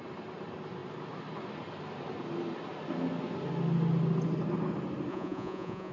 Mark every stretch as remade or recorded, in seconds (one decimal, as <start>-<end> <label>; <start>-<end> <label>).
0.0-5.1 recorded; 5.1-5.9 remade